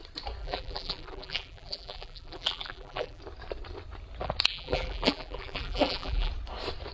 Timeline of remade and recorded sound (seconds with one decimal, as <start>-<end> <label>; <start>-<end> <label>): 0.0-0.4 recorded; 0.4-3.2 remade; 3.2-4.5 recorded; 4.5-6.3 remade; 6.3-6.9 recorded